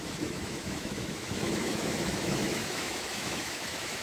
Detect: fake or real fake